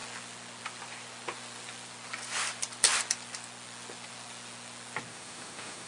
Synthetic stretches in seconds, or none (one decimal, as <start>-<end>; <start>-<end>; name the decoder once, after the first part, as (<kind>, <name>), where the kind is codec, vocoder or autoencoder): 5.1-5.9 (autoencoder, DAC-VAE)